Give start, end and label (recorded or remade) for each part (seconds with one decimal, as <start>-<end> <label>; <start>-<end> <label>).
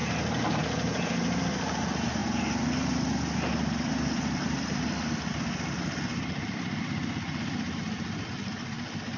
0.0-9.2 recorded